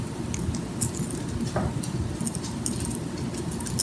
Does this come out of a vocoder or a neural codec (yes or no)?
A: no